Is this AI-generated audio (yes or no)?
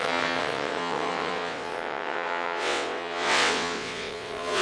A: yes